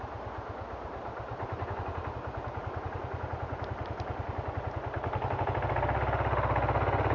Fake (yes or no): no